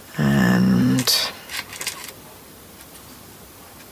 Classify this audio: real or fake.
real